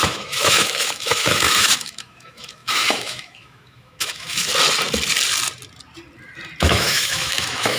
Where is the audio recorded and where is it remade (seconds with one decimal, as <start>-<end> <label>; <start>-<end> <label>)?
0.0-4.5 remade; 4.5-6.6 recorded; 6.6-7.8 remade